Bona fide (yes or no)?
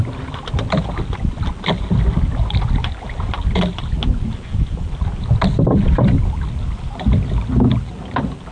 yes